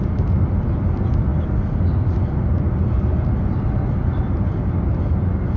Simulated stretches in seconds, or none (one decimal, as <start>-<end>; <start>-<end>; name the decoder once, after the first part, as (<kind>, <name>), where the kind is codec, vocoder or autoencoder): none